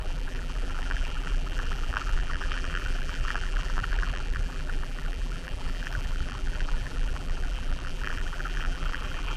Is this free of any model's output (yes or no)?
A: no